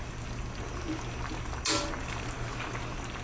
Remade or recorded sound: recorded